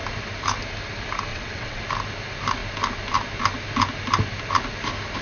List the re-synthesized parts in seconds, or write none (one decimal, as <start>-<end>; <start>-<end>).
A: 1.3-1.8